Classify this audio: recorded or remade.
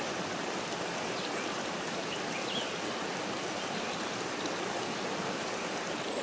recorded